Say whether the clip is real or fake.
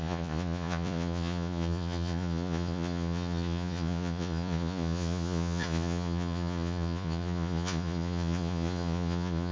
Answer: fake